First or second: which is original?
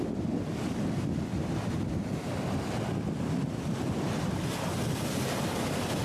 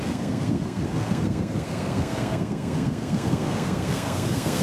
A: first